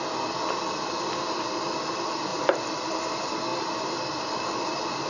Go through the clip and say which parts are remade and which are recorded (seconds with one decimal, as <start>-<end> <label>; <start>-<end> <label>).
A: 0.0-2.3 recorded; 2.3-2.9 remade; 2.9-3.5 recorded; 3.5-5.1 remade